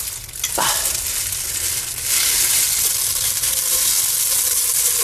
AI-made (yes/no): no